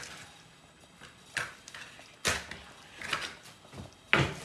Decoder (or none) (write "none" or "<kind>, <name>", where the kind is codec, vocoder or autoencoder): none